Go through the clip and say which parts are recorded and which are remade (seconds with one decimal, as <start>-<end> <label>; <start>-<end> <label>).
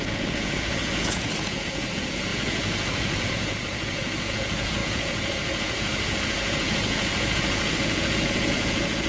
0.0-9.1 remade